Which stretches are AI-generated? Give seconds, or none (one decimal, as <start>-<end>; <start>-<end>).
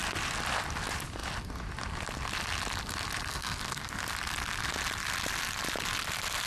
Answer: 3.3-4.0